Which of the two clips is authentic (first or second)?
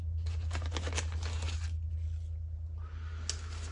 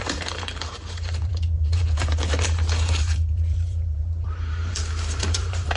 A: first